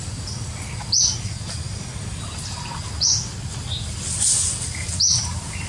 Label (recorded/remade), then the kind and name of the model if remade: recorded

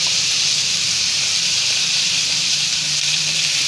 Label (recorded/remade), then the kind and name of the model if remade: remade, vocoder, BigVGAN v2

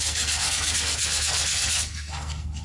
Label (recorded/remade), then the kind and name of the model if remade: remade, codec, SNAC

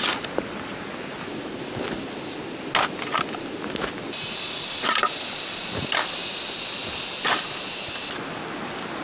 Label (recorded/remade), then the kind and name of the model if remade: recorded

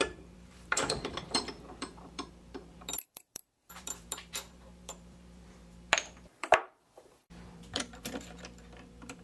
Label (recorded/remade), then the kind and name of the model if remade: remade, vocoder, BigVGAN v2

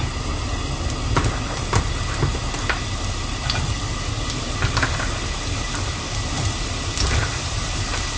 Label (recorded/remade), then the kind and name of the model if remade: recorded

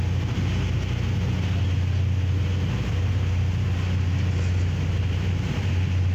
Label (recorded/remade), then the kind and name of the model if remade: recorded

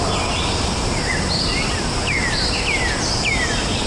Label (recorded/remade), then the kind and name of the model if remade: remade, vocoder, BigVGAN v2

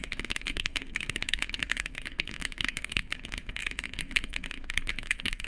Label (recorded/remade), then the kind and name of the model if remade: remade, codec, SNAC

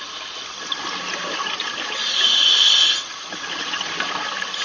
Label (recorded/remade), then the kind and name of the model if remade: recorded